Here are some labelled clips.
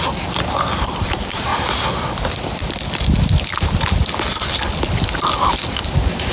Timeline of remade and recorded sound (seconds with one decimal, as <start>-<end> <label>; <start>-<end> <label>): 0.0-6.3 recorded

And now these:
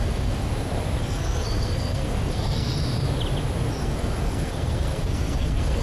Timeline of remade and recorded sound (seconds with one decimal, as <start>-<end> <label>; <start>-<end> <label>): 0.0-0.5 remade; 0.5-1.0 recorded; 1.0-2.8 remade; 2.8-3.7 recorded; 3.7-5.8 remade

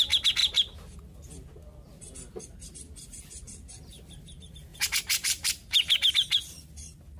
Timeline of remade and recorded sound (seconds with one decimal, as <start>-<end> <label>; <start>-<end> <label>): 0.0-4.7 recorded; 4.7-6.1 remade; 6.1-7.2 recorded

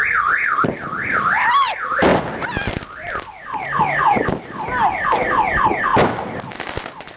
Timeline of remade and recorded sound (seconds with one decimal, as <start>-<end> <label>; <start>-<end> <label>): 0.0-7.2 recorded

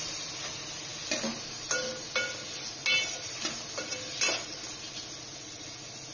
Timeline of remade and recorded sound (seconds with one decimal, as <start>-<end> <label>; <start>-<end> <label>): 0.0-6.1 recorded

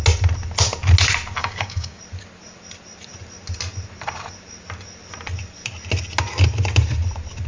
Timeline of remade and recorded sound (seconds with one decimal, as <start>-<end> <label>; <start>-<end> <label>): 0.0-1.4 recorded; 1.4-2.0 remade; 2.0-7.5 recorded